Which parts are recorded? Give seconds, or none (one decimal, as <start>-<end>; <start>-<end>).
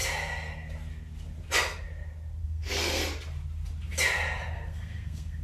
0.0-2.4; 3.0-4.5